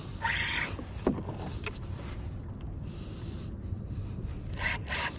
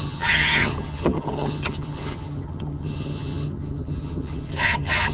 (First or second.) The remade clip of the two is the second